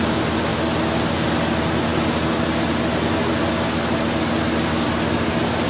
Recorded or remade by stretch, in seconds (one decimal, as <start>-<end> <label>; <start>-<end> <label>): 0.0-5.7 recorded